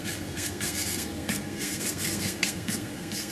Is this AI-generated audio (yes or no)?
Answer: yes